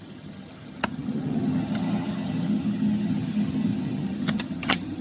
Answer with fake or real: fake